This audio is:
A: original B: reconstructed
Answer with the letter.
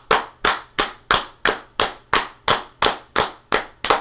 A